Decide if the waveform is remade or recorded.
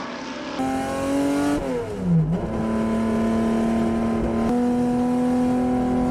recorded